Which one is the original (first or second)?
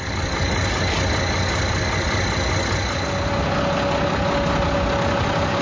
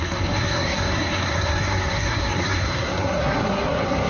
first